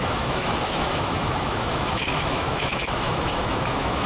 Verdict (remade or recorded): remade